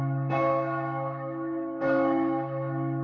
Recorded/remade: remade